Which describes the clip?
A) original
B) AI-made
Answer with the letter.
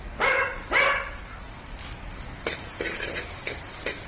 A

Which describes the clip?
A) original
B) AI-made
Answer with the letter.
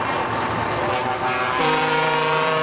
B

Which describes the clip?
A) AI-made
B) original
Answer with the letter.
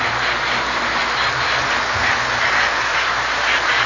B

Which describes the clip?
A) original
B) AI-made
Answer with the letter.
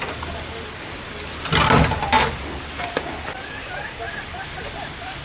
A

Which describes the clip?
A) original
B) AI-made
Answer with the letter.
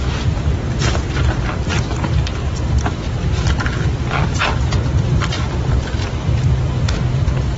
B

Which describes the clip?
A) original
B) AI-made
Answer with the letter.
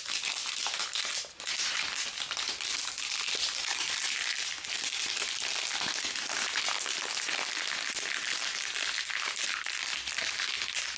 A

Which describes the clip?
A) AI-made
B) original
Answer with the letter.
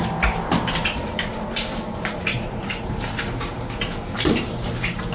A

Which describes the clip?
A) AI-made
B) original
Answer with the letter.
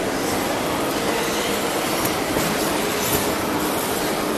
A